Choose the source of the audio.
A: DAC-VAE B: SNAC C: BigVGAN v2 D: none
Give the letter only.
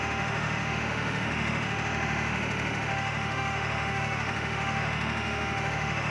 A